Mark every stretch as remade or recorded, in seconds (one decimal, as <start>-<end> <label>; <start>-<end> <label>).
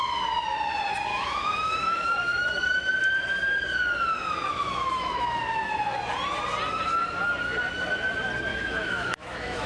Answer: 0.0-1.1 recorded; 1.1-2.9 remade; 2.9-4.5 recorded; 4.5-5.4 remade; 5.4-8.5 recorded; 8.5-9.7 remade